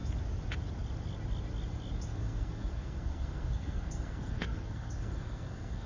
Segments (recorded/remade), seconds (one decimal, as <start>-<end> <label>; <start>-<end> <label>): 0.0-2.1 recorded; 2.1-5.9 remade